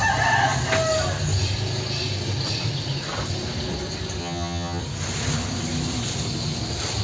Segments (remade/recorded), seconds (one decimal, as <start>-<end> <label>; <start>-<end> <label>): 0.0-4.2 recorded; 4.2-4.8 remade; 4.8-7.0 recorded

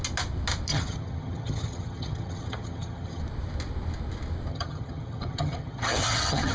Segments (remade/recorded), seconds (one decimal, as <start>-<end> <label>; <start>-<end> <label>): 0.0-0.7 recorded; 0.7-3.2 remade; 3.2-4.5 recorded; 4.5-6.5 remade

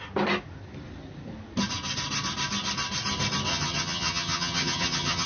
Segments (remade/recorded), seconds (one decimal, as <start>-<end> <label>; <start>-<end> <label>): 0.0-3.5 recorded; 3.5-5.3 remade

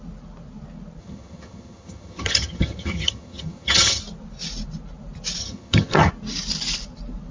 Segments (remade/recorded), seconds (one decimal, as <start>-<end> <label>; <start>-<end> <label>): 0.0-1.0 recorded; 1.0-4.0 remade; 4.0-5.4 recorded; 5.4-6.1 remade; 6.1-7.3 recorded

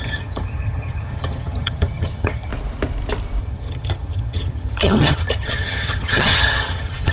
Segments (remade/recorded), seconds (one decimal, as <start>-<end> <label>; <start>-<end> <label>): 0.0-2.5 remade; 2.5-3.4 recorded; 3.4-7.1 remade